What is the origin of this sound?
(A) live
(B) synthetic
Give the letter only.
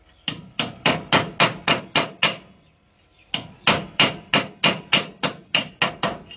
A